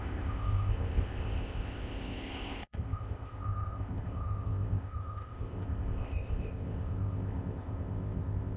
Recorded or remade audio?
remade